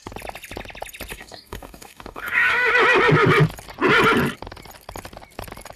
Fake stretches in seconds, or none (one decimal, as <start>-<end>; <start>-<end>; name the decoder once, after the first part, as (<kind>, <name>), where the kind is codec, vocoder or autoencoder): 1.1-2.7 (codec, DAC)